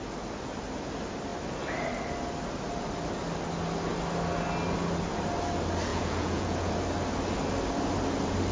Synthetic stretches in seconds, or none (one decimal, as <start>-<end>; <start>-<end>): 5.9-6.7